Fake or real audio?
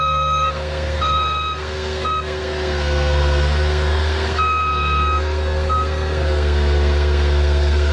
fake